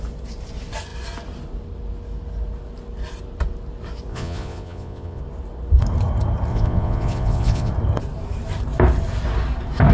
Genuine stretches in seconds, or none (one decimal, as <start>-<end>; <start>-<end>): 0.0-4.1; 5.2-6.5; 7.7-9.9